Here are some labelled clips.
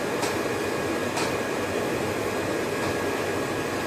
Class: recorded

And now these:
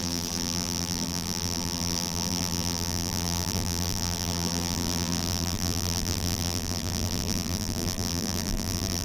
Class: remade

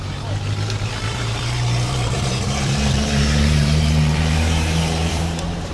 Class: remade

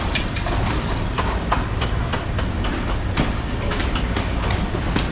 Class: remade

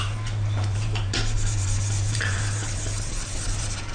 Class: remade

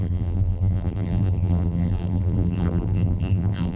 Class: remade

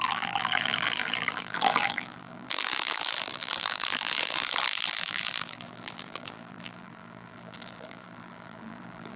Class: remade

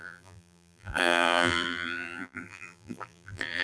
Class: remade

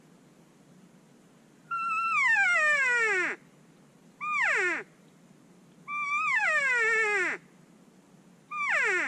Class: recorded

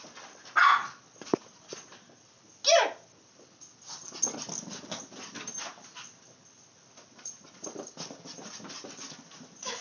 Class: recorded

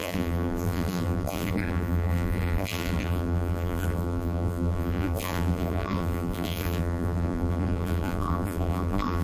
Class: remade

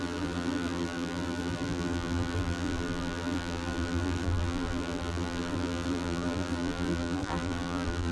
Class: remade